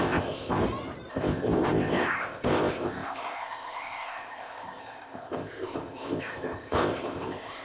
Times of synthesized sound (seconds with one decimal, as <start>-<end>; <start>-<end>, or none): 0.0-0.6; 1.1-7.6